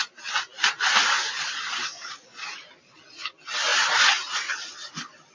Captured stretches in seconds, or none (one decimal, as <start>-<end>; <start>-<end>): 0.0-5.3